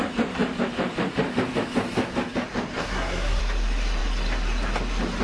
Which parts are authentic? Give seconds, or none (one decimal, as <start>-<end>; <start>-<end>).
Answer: 0.0-2.8; 3.4-5.2